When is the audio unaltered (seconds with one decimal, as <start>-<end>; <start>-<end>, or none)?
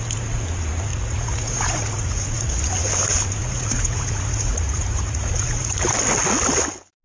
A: 0.0-0.9; 2.6-3.4; 5.9-7.0